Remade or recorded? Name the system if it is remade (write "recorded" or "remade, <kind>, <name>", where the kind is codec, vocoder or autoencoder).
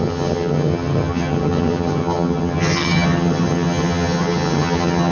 remade, vocoder, HiFi-GAN